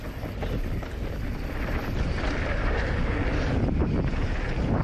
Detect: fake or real real